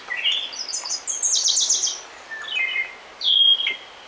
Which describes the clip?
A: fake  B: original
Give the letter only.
B